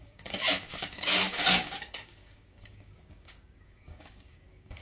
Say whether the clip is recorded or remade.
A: remade